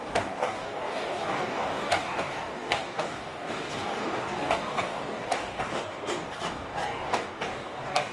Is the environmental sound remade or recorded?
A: remade